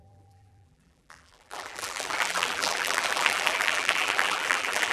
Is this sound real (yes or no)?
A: no